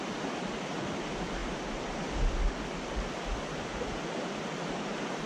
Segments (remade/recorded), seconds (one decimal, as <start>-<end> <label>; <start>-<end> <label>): 0.0-5.3 recorded